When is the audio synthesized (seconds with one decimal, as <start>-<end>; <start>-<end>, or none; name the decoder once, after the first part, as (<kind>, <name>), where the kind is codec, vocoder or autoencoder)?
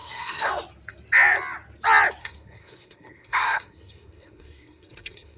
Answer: 0.0-0.5 (codec, SNAC); 2.2-5.4